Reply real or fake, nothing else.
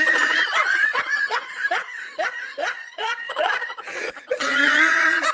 fake